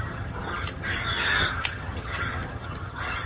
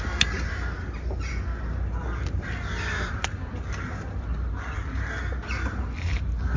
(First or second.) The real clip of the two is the second